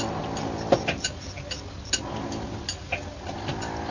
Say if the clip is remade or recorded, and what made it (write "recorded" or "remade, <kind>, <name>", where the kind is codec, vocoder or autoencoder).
recorded